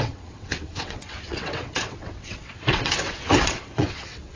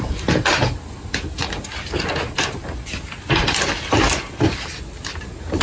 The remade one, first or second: first